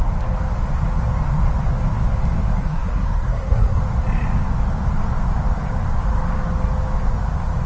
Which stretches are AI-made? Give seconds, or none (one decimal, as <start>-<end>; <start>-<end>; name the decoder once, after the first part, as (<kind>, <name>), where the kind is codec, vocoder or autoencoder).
2.6-3.8 (codec, SNAC)